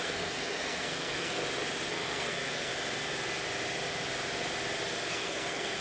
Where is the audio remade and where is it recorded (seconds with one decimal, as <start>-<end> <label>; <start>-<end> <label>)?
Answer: 0.0-1.4 remade; 1.4-1.9 recorded; 1.9-2.7 remade; 2.7-5.1 recorded; 5.1-5.8 remade